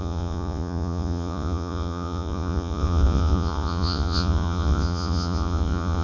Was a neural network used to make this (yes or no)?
yes